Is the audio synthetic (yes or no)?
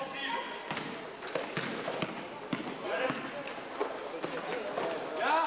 no